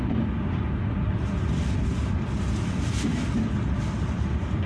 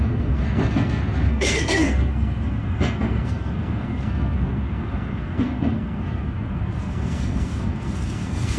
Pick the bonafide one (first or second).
first